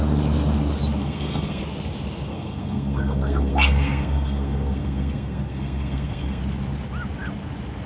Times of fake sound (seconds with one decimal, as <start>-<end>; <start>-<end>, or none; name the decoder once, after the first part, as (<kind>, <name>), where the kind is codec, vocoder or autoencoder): 1.0-1.6 (codec, SNAC); 2.3-6.4